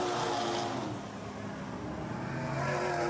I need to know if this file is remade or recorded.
recorded